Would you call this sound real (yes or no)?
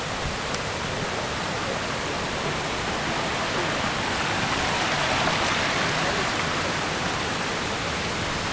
yes